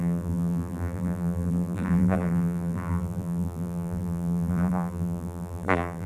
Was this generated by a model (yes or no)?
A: yes